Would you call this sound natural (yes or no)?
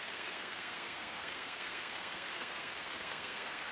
no